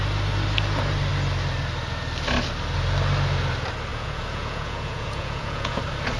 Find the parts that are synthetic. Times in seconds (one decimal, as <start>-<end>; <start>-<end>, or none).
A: 3.9-5.8

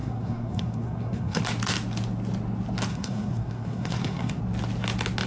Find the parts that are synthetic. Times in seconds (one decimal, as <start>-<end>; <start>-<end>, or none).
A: 0.0-1.4; 2.9-4.4

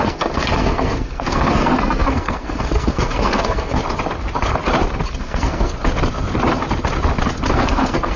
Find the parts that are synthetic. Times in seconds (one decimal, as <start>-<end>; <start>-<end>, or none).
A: 0.0-3.8; 5.2-5.8; 7.5-8.2

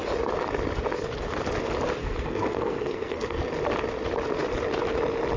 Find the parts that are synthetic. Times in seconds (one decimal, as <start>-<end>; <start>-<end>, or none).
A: 2.0-3.4

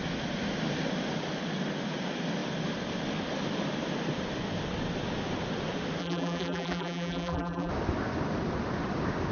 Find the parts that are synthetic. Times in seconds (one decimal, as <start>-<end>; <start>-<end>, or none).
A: 6.0-7.7

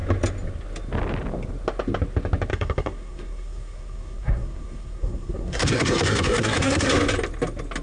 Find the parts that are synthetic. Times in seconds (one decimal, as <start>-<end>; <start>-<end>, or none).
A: 2.5-6.9